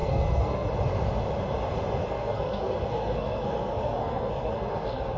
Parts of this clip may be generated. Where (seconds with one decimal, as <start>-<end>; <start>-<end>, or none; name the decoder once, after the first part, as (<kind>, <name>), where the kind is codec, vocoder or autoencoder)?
0.0-0.7 (codec, SNAC); 2.0-5.2